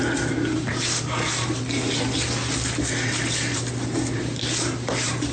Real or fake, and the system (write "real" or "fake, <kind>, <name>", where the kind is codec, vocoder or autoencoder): real